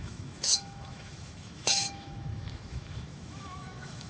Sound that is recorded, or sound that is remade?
remade